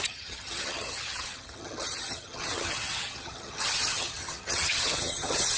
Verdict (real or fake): fake